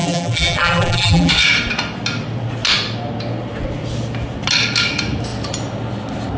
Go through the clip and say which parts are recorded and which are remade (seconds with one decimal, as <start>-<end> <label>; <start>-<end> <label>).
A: 0.0-1.3 remade; 1.3-6.4 recorded